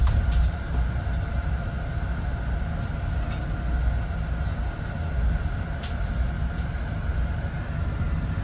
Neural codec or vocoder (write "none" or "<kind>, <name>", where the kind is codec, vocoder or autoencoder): none